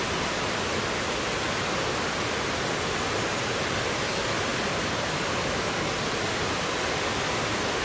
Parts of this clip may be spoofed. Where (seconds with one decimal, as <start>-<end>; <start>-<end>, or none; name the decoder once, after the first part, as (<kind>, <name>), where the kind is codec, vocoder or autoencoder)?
4.5-6.8 (vocoder, BigVGAN v2)